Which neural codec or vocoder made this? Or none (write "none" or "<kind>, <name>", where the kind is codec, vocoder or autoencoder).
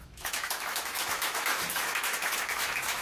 autoencoder, DAC-VAE